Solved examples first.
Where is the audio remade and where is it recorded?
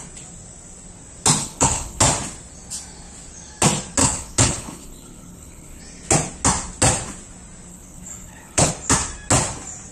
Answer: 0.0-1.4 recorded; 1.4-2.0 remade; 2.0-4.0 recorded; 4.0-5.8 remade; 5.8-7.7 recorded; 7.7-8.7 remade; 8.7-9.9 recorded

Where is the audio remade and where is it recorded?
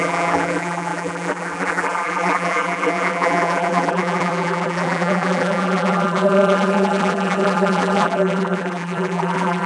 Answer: 0.0-9.7 remade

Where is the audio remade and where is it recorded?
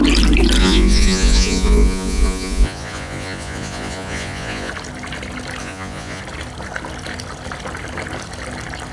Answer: 0.0-0.6 recorded; 0.6-4.7 remade; 4.7-5.6 recorded; 5.6-6.2 remade; 6.2-8.9 recorded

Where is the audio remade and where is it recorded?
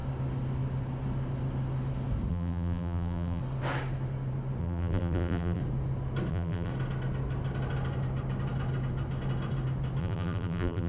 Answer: 0.0-2.3 recorded; 2.3-3.4 remade; 3.4-4.6 recorded; 4.6-5.6 remade; 5.6-6.3 recorded; 6.3-6.7 remade; 6.7-10.0 recorded; 10.0-10.9 remade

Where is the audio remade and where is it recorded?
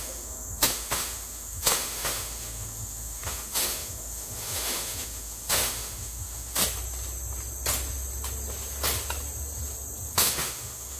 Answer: 0.0-6.6 remade; 6.6-10.1 recorded; 10.1-11.0 remade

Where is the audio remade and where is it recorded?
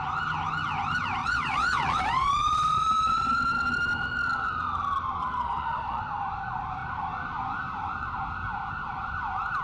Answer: 0.0-1.2 recorded; 1.2-3.4 remade; 3.4-5.2 recorded; 5.2-6.0 remade; 6.0-9.6 recorded